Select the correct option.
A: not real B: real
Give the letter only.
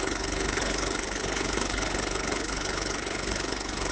A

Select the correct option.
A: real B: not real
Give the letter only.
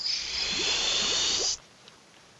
A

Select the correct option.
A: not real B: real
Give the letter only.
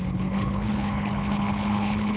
A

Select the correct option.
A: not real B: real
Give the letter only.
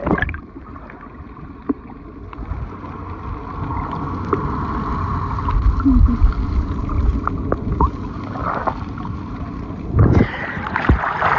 B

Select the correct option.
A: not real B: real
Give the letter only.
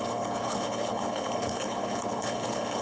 A